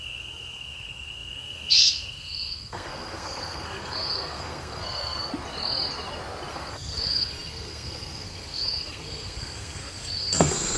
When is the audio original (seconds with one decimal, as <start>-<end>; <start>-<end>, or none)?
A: 5.3-6.5